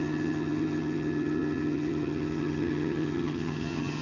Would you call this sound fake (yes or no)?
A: yes